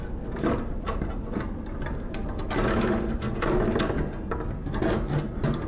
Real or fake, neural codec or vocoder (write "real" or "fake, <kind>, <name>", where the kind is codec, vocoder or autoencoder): real